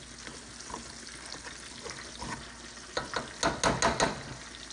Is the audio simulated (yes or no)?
no